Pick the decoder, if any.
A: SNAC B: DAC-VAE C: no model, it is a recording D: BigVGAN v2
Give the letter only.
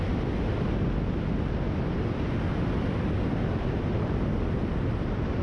C